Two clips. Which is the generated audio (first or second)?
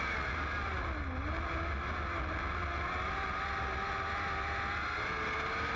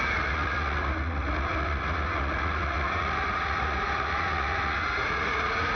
second